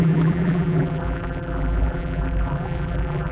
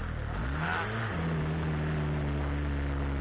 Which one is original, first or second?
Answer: second